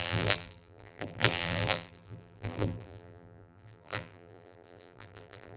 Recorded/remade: remade